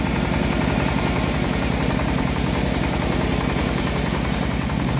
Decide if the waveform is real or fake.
real